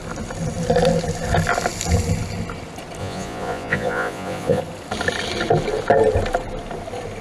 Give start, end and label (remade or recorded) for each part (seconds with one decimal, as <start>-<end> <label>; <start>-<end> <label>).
0.0-3.0 recorded; 3.0-4.6 remade; 4.6-7.2 recorded